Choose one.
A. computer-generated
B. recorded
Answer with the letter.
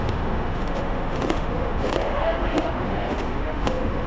A